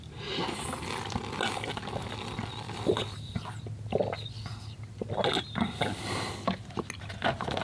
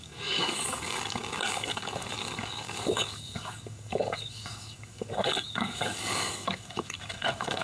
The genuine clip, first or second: first